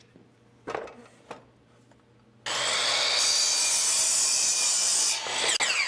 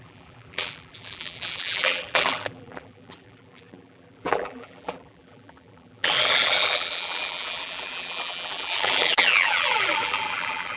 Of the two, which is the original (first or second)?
first